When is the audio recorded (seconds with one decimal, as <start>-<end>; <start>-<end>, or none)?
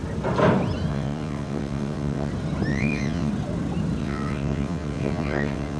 0.0-0.9; 2.3-2.7; 3.3-4.0